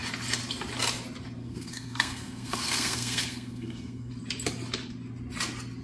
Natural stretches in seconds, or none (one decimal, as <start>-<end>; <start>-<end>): 0.0-1.4; 4.1-5.8